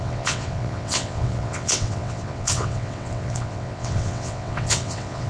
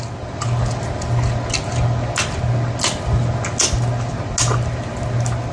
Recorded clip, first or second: second